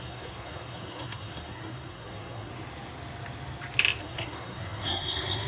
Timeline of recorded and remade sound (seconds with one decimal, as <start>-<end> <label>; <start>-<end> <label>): 0.0-2.5 remade; 2.5-4.0 recorded; 4.0-5.5 remade